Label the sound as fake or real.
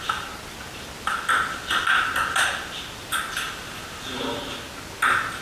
real